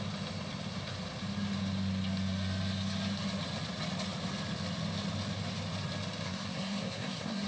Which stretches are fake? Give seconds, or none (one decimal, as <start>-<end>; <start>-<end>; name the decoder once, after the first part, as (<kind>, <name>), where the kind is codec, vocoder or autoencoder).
6.2-7.5 (codec, SNAC)